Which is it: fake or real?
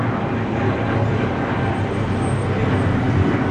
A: real